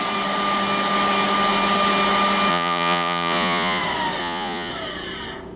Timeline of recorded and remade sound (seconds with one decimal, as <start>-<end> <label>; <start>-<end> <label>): 0.0-2.5 recorded; 2.5-3.8 remade; 3.8-4.2 recorded; 4.2-4.7 remade; 4.7-5.6 recorded